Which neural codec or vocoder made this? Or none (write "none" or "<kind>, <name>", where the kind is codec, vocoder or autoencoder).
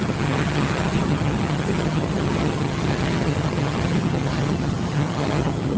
vocoder, HiFi-GAN